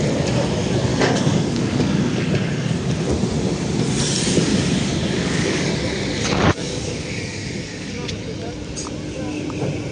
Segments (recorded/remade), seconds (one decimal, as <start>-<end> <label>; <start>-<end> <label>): 0.0-0.9 recorded; 0.9-2.9 remade; 2.9-4.5 recorded; 4.5-8.1 remade; 8.1-9.9 recorded